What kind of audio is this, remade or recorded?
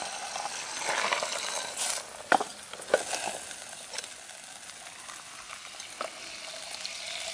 recorded